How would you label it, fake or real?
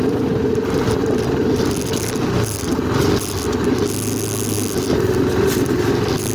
real